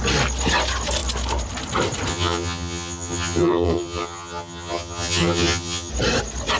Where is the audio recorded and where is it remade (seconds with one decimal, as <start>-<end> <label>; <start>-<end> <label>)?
0.0-2.1 recorded; 2.1-5.9 remade; 5.9-6.6 recorded